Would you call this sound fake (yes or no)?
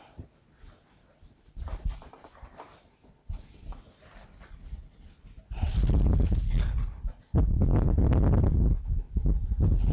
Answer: no